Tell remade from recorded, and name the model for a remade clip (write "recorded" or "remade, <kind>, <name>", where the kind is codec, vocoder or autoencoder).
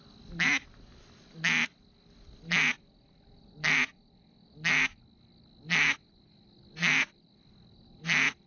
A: recorded